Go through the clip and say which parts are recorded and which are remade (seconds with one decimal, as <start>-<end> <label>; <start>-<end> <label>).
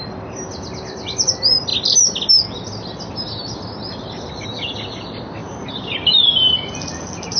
0.0-5.4 recorded; 5.4-5.9 remade; 5.9-7.4 recorded